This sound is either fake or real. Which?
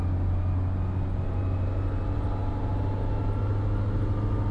real